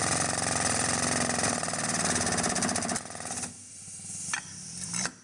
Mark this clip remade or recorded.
recorded